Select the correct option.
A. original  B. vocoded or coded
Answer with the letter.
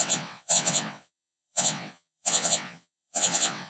B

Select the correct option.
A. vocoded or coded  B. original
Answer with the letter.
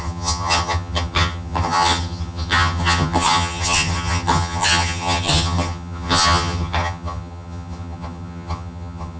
A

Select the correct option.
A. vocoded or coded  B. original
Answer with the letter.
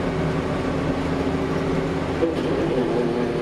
B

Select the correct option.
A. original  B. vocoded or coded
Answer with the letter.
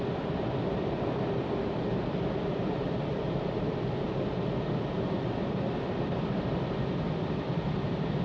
B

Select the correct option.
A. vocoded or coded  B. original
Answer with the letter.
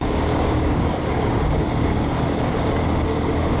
A